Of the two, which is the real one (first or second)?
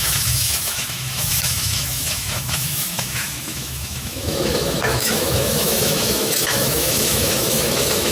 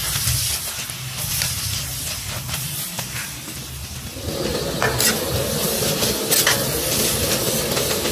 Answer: second